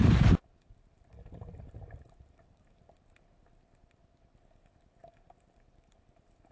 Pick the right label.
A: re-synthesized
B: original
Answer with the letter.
B